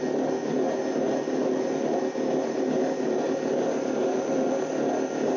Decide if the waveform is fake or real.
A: real